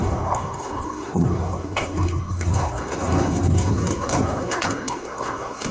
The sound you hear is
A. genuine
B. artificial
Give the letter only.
B